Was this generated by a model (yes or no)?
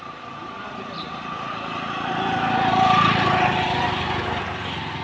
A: no